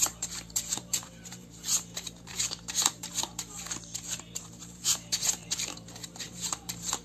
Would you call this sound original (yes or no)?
no